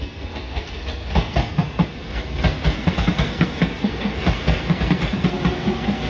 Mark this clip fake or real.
fake